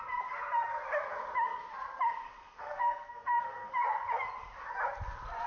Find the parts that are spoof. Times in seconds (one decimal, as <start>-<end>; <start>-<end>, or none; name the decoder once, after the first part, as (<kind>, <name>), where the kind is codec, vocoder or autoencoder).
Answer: 2.4-3.7 (codec, SNAC)